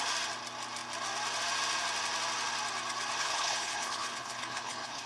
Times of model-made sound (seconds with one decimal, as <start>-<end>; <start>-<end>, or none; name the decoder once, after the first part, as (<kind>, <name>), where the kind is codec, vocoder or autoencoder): 3.2-5.1 (codec, HILCodec)

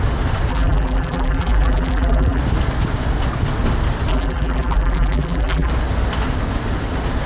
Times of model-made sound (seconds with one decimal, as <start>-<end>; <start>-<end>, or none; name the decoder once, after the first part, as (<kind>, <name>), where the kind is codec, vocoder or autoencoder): 0.5-2.4 (vocoder, BigVGAN v2); 4.1-5.7

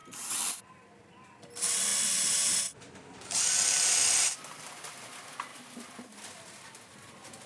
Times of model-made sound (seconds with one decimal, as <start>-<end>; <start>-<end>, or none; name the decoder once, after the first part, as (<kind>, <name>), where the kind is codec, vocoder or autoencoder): 1.9-3.4 (vocoder, BigVGAN v2); 5.5-7.1